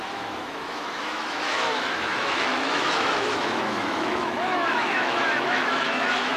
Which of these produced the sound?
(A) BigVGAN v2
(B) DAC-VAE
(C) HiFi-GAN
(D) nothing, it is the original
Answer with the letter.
B